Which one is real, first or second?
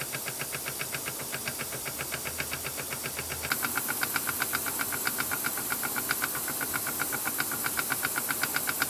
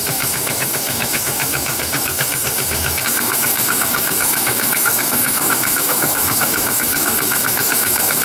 first